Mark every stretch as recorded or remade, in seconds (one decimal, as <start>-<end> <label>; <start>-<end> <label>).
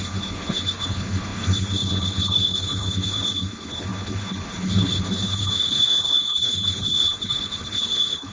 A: 0.0-8.3 remade